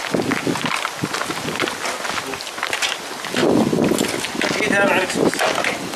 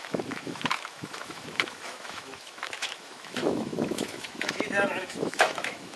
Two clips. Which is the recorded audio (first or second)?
first